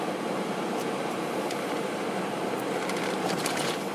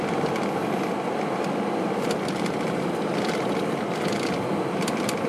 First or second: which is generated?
first